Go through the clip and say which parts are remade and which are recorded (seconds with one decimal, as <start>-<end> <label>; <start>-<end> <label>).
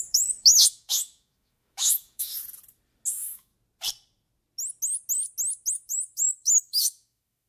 0.0-2.3 remade; 2.3-3.1 recorded; 3.1-3.5 remade; 3.5-5.7 recorded; 5.7-7.5 remade